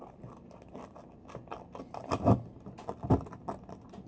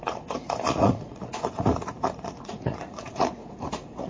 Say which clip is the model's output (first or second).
second